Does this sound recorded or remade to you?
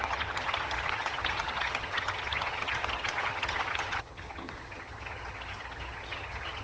remade